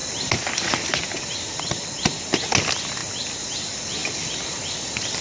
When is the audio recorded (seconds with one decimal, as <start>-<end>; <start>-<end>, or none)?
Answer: 0.0-5.2